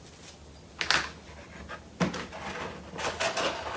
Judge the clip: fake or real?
real